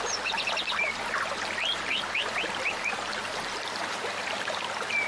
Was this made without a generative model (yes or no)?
no